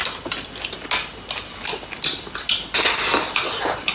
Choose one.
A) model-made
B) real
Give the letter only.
B